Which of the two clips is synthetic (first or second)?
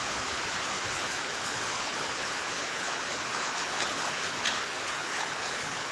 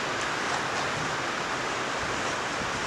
first